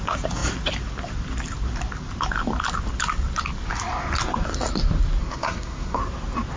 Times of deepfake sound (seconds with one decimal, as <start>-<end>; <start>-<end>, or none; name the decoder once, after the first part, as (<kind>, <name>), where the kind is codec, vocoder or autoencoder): 5.2-6.0 (codec, SNAC)